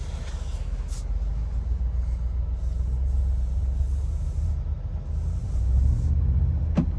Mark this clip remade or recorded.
recorded